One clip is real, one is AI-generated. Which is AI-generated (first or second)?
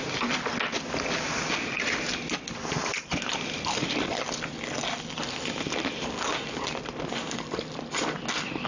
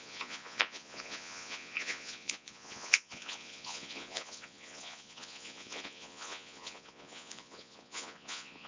second